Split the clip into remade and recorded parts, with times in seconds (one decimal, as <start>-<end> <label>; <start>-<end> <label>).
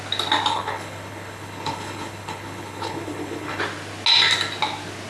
0.0-0.5 recorded; 0.5-3.6 remade; 3.6-5.1 recorded